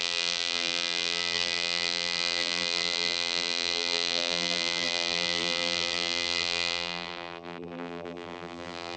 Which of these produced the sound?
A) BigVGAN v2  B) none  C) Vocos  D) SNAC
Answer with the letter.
A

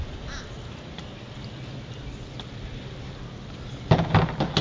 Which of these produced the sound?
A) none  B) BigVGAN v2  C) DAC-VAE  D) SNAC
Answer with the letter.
A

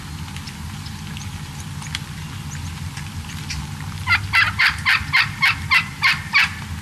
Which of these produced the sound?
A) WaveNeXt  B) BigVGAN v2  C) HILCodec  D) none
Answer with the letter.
D